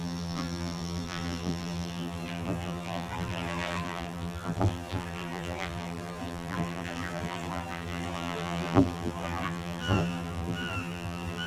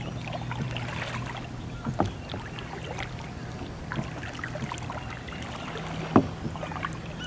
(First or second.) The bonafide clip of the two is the second